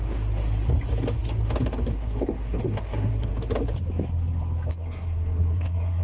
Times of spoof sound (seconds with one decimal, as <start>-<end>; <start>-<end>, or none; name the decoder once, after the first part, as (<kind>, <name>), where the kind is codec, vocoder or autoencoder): 1.9-3.3 (codec, SNAC); 4.7-6.0